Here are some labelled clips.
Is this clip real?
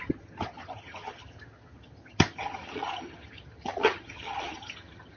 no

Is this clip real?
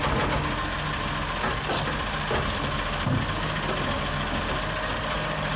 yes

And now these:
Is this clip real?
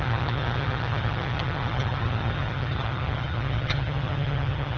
no